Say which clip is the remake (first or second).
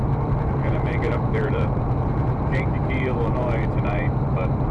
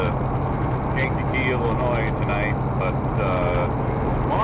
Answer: first